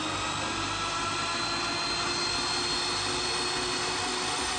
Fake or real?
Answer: real